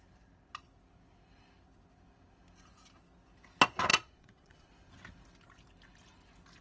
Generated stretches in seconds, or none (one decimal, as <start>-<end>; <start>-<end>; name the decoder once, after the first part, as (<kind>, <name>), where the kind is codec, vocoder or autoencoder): 3.9-4.7 (vocoder, Vocos)

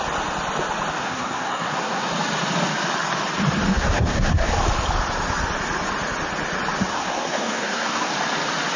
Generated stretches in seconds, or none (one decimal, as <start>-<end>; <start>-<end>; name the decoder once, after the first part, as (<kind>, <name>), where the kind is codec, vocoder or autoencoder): 1.0-2.1 (codec, SNAC); 3.7-4.5; 6.9-8.1

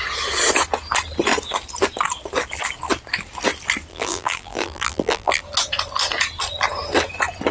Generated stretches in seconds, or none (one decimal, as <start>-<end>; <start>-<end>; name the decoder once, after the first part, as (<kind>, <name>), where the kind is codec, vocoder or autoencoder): 3.9-5.4 (vocoder, BigVGAN v2)

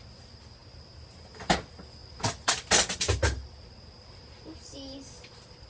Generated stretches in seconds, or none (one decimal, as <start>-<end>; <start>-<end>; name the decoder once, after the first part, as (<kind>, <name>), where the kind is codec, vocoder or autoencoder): none

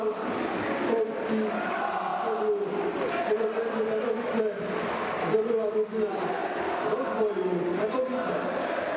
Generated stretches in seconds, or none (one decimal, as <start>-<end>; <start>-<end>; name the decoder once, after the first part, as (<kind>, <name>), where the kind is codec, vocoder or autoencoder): none